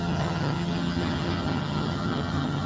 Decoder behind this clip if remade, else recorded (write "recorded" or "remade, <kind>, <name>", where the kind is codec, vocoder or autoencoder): remade, vocoder, HiFi-GAN